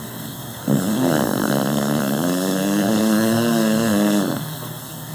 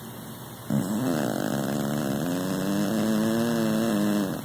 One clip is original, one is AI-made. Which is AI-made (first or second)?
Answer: first